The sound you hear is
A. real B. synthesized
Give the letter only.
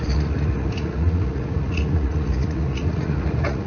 B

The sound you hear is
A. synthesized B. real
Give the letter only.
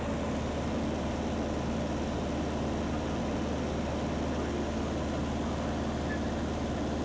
B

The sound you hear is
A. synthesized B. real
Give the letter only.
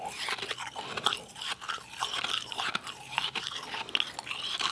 B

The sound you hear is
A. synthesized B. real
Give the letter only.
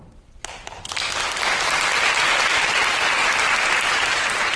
B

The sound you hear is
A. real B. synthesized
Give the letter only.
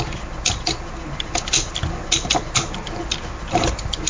A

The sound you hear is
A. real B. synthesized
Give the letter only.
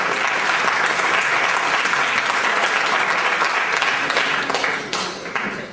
A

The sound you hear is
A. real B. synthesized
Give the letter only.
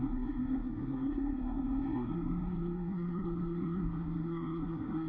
B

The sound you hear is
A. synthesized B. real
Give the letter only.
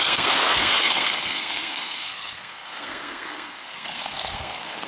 A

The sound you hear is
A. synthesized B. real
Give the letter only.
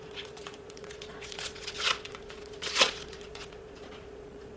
A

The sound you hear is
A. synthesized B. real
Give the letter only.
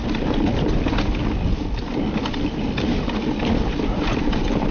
B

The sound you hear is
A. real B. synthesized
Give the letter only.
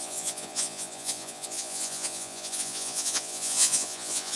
B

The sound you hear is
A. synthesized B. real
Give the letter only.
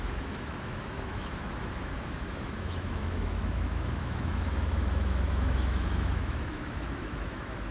A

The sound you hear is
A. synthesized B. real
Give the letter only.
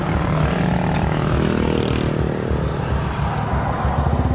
B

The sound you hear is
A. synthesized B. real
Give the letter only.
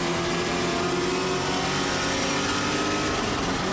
B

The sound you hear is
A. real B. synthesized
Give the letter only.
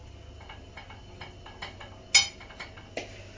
A